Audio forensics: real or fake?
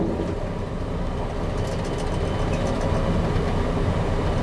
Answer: real